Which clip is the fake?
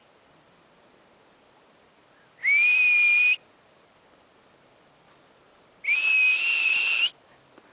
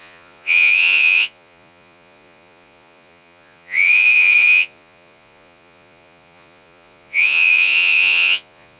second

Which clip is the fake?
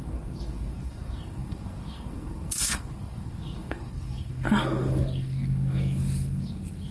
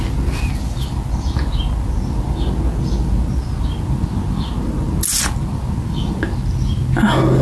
first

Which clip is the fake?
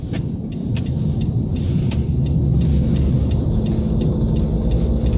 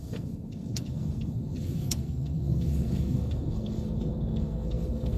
second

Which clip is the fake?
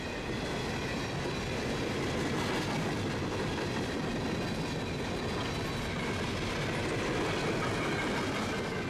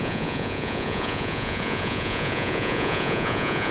second